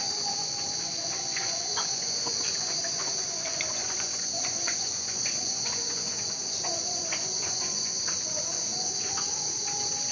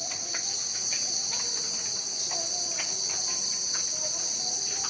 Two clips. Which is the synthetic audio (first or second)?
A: first